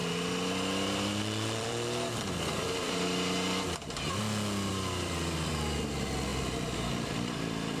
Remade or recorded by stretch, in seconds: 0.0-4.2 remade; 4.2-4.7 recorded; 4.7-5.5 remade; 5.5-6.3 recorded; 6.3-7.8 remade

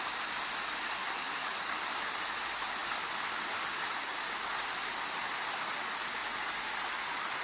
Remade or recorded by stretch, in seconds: 0.0-7.4 remade

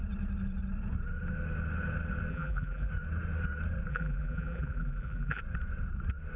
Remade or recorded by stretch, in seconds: 0.0-2.3 recorded; 2.3-2.9 remade; 2.9-3.9 recorded; 3.9-5.4 remade; 5.4-6.4 recorded

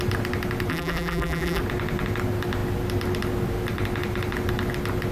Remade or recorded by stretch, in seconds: 0.0-0.7 recorded; 0.7-1.6 remade; 1.6-5.1 recorded